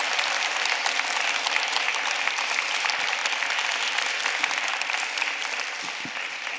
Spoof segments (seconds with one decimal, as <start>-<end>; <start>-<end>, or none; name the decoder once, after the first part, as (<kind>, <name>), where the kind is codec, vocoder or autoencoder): 1.9-2.6 (vocoder, BigVGAN v2)